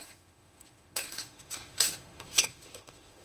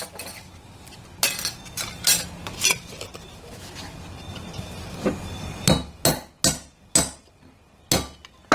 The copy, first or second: first